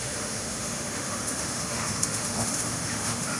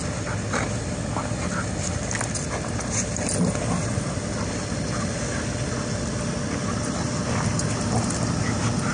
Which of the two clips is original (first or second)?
second